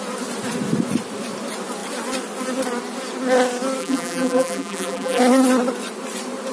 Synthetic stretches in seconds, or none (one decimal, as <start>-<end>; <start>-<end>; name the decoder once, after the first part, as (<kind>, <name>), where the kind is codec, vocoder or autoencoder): 3.8-5.2 (vocoder, BigVGAN v2)